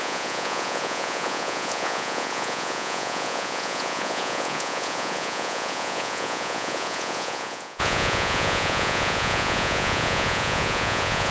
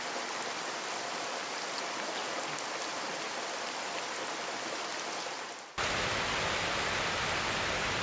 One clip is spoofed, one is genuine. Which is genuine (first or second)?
second